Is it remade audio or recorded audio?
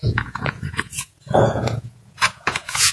remade